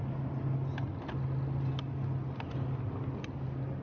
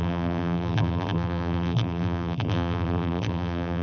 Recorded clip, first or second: first